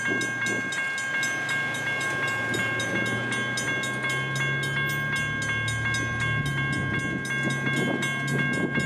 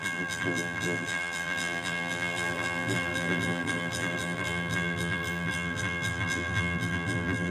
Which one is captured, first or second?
first